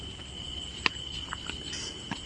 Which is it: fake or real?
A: real